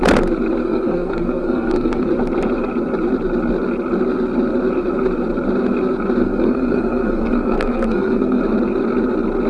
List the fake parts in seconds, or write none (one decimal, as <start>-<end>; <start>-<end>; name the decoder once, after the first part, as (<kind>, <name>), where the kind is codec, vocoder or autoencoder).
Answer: 0.6-2.1 (codec, SNAC); 6.2-8.4